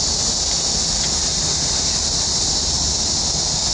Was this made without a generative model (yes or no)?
yes